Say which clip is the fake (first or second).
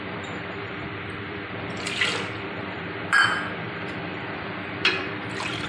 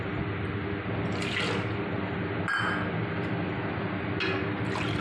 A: first